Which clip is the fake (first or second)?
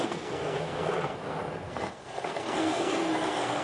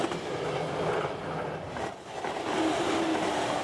first